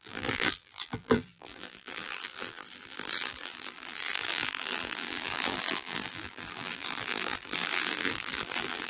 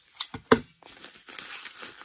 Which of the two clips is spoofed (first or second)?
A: first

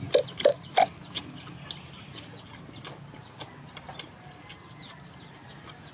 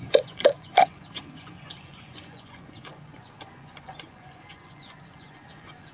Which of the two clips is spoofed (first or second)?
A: second